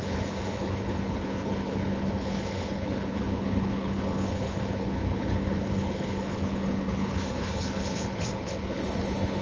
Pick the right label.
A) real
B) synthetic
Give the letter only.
B